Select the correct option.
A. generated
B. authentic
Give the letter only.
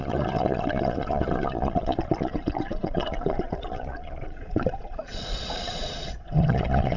A